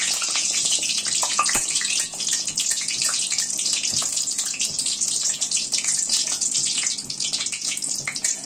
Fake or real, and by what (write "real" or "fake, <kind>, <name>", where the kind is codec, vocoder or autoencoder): fake, vocoder, Vocos